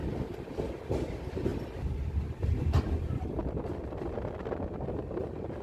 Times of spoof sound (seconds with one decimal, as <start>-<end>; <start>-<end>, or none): none

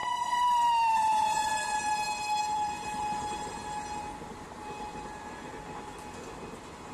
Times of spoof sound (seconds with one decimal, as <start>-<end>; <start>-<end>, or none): 0.0-1.9; 2.4-3.0

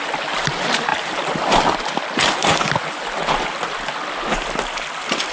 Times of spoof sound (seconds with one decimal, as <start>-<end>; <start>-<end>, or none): none

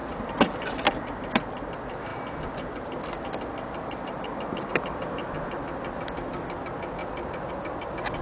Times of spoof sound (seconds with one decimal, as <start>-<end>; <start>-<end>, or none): 7.0-7.5

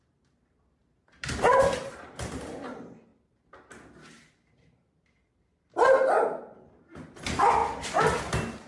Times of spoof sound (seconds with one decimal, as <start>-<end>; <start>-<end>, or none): 0.0-3.1; 6.4-7.6; 8.2-8.7